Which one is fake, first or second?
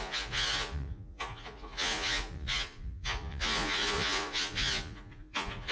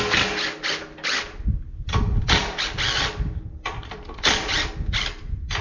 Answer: first